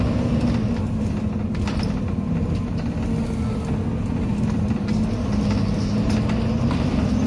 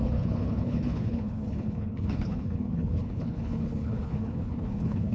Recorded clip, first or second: first